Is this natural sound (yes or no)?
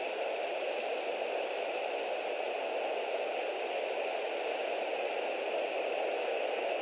yes